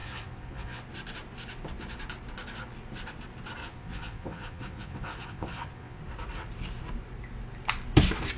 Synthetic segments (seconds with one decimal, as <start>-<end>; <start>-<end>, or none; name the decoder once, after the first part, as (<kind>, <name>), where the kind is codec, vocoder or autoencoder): 0.0-0.8 (vocoder, Vocos); 3.6-6.0